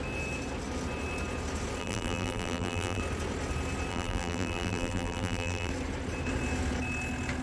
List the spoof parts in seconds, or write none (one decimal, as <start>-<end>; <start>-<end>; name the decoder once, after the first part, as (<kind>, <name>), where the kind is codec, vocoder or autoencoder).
1.8-3.0 (vocoder, BigVGAN v2); 3.9-5.7

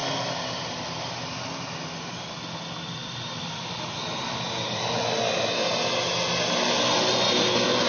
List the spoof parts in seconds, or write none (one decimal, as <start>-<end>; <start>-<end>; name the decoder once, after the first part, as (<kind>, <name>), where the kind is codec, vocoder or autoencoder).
0.0-1.5 (vocoder, BigVGAN v2); 3.0-4.2